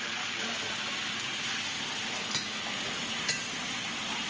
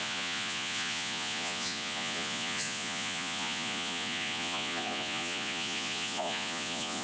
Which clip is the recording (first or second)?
first